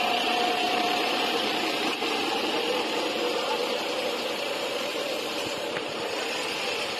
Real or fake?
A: fake